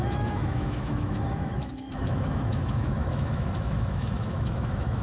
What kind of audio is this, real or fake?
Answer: fake